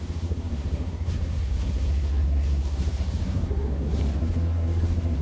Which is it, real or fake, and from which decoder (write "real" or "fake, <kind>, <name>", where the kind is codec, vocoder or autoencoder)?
fake, codec, SNAC